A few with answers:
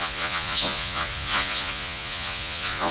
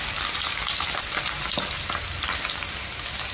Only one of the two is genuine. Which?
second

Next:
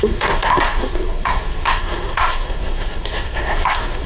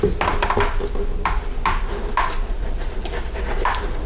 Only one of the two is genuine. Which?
second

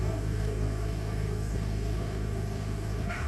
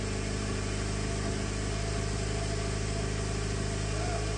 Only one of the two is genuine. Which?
second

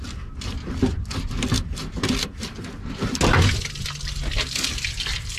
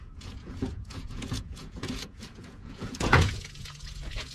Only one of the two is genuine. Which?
first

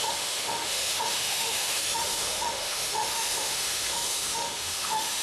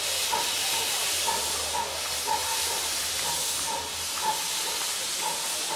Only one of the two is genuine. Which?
second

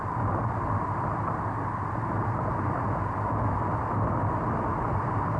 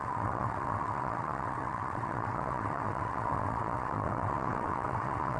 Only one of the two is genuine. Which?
first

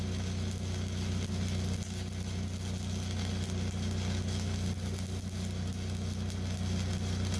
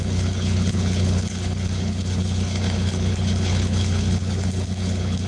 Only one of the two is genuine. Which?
first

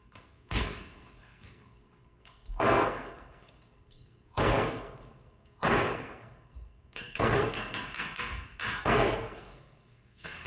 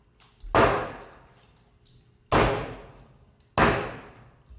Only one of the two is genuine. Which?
second